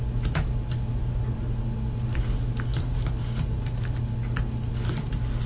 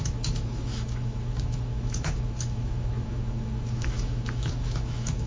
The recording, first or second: first